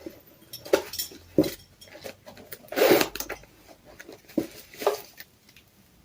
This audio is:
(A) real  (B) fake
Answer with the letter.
A